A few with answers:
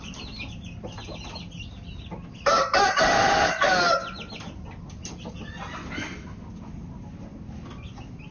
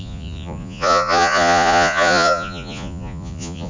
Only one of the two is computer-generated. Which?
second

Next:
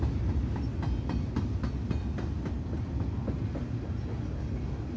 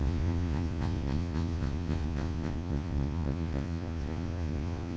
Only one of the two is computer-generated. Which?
second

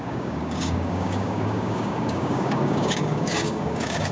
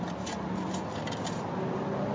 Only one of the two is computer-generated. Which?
first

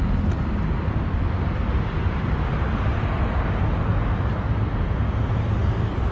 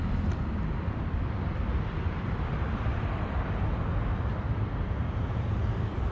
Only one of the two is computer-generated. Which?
second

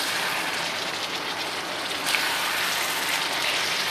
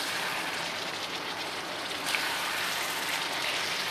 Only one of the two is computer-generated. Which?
second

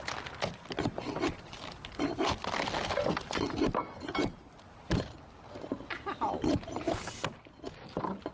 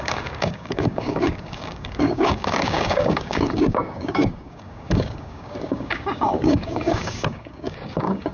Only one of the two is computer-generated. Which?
second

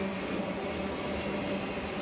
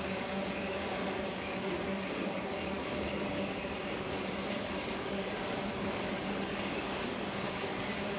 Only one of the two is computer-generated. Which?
second